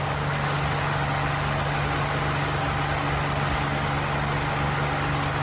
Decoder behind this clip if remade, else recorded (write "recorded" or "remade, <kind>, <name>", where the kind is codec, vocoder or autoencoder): recorded